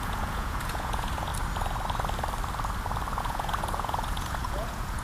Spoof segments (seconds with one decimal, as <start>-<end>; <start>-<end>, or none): 0.0-1.3; 3.2-5.0